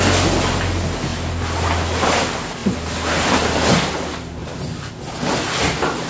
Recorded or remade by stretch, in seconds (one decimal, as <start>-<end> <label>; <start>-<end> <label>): 0.0-6.1 recorded